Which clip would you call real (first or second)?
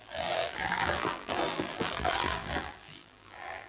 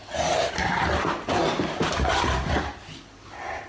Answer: second